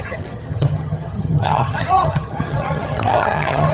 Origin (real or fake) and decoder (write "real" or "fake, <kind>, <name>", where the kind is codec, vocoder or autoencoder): fake, vocoder, HiFi-GAN